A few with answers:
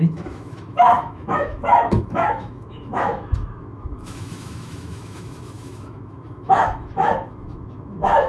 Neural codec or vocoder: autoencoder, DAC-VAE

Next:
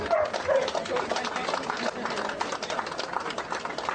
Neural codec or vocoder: none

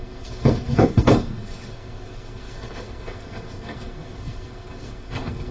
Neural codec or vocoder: codec, SNAC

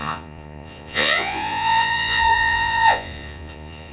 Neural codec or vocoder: vocoder, Vocos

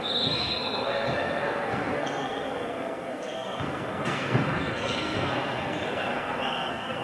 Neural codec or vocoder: codec, SNAC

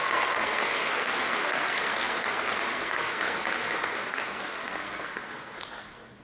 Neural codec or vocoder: codec, SNAC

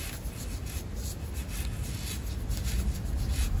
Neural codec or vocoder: none